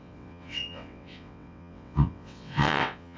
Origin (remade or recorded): remade